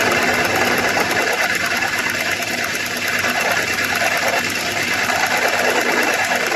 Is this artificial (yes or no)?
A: no